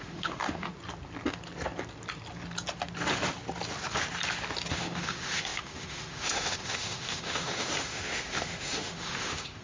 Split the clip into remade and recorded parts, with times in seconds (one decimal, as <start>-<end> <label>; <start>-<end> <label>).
0.0-0.7 remade; 0.7-4.7 recorded; 4.7-9.6 remade